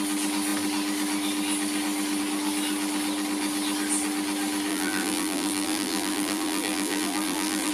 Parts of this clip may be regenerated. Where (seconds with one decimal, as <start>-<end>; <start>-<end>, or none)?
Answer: 4.7-7.7